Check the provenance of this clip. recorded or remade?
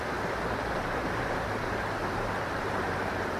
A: remade